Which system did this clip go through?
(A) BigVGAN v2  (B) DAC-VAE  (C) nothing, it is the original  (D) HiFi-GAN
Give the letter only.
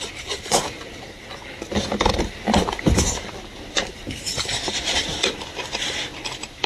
A